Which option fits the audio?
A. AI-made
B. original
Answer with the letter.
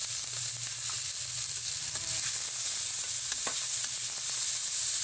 B